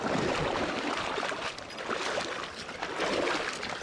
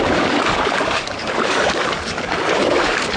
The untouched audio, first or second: first